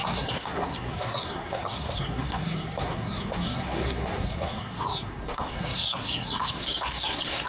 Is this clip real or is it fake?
fake